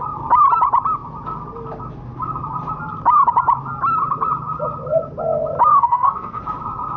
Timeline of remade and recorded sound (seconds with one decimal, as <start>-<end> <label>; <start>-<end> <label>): 0.0-5.7 recorded; 5.7-6.4 remade; 6.4-7.0 recorded